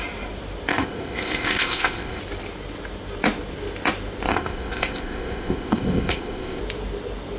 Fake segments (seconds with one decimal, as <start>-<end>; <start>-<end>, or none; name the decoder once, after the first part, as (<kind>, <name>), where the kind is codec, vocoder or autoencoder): 0.7-2.2 (codec, ZipCodec); 4.3-6.6